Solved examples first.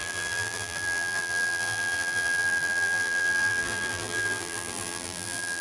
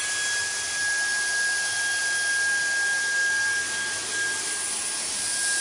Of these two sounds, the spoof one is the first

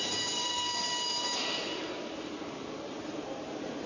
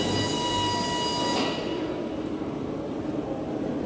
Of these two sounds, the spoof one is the first